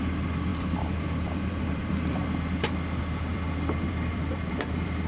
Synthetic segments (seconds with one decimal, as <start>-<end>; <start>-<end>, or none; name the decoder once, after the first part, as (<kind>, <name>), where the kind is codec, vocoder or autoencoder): 0.0-2.2 (vocoder, BigVGAN v2); 3.0-5.1